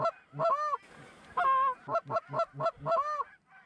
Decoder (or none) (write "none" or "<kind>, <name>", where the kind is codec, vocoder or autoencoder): none